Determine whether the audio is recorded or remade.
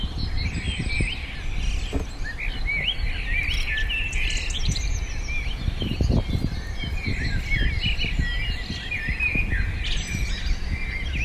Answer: recorded